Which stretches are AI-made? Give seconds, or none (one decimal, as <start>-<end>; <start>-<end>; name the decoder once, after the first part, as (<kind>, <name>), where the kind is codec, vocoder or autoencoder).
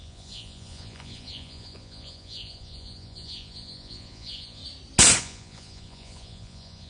0.0-4.6 (vocoder, Vocos); 5.2-6.9